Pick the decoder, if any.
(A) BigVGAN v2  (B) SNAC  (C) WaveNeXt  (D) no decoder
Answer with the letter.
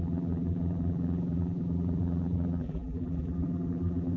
A